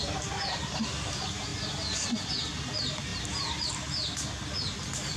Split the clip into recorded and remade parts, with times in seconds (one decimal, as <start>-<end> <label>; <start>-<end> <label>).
0.0-5.2 recorded